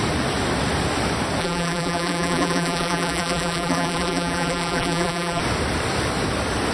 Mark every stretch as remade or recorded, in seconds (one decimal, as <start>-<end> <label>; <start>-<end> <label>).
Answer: 0.0-1.4 recorded; 1.4-5.4 remade; 5.4-6.7 recorded